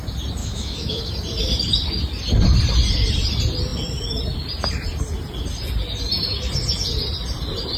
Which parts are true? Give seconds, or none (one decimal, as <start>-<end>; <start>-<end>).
0.0-0.4; 1.0-7.8